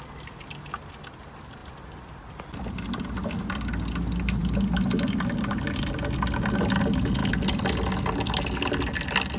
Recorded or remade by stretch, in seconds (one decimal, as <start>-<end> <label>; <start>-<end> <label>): 0.0-9.4 recorded